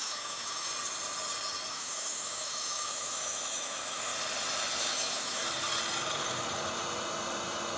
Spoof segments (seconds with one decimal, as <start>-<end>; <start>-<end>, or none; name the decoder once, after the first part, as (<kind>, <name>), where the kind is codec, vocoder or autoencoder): 0.0-0.7 (autoencoder, DAC-VAE); 1.7-4.1; 4.8-5.4

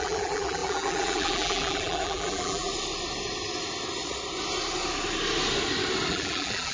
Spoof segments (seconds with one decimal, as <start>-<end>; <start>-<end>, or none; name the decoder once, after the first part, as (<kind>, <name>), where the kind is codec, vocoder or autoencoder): 0.0-2.7 (vocoder, BigVGAN v2); 6.1-6.7

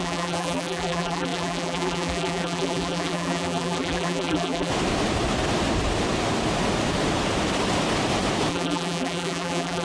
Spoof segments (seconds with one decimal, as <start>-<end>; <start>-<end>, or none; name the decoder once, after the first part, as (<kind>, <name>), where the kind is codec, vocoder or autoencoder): 0.0-4.7 (vocoder, BigVGAN v2); 8.5-9.8

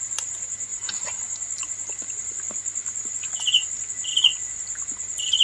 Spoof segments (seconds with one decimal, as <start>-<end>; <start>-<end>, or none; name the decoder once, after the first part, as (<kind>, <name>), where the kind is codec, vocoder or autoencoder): none

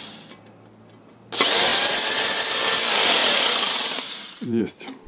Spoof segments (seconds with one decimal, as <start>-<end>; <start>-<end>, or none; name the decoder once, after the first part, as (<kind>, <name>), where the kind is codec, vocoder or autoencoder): 3.2-4.6 (vocoder, Vocos)